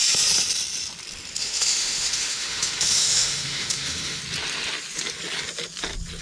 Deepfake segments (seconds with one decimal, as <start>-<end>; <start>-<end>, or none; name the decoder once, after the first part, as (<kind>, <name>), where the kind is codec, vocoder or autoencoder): 1.4-4.2 (autoencoder, DAC-VAE)